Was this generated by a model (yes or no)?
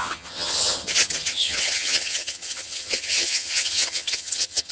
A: yes